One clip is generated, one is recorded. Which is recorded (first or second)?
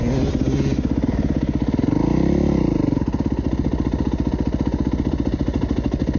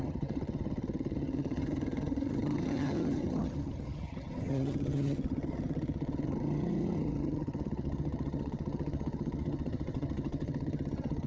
first